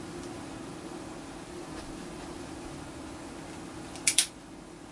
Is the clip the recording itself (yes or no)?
yes